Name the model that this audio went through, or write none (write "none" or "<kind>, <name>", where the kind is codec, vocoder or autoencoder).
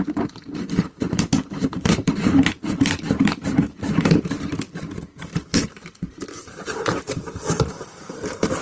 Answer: vocoder, BigVGAN v2